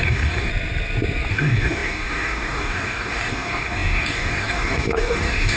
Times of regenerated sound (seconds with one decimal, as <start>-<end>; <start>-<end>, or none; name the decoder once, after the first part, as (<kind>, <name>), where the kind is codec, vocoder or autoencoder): 0.0-0.5 (codec, DAC); 1.3-5.6